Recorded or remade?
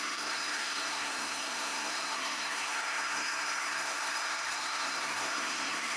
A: remade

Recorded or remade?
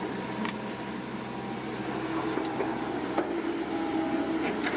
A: recorded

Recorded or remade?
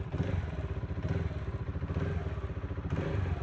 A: recorded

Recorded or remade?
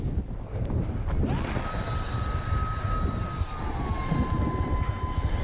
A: recorded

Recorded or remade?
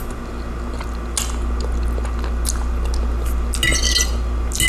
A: recorded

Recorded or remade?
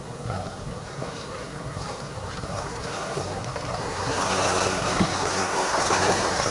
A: remade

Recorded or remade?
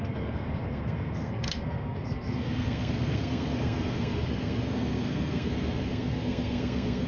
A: remade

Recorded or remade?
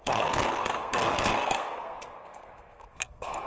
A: remade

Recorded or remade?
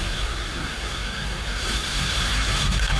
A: remade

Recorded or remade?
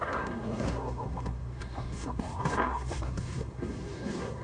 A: remade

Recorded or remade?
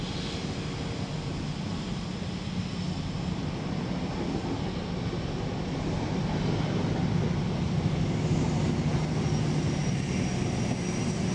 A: recorded